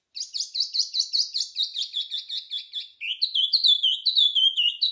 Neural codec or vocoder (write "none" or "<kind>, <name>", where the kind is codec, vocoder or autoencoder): none